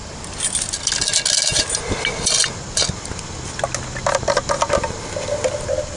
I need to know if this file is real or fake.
real